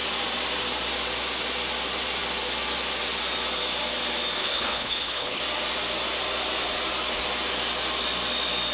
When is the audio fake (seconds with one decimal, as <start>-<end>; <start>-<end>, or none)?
4.4-5.4